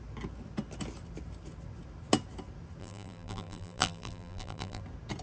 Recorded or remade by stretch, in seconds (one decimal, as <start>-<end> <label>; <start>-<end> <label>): 0.0-2.8 recorded; 2.8-4.8 remade; 4.8-5.2 recorded